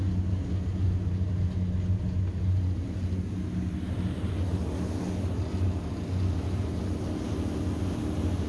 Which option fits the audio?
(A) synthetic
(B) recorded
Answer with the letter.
B